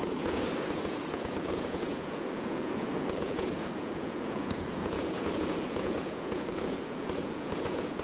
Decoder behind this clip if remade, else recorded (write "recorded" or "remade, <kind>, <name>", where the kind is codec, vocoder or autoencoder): remade, vocoder, Vocos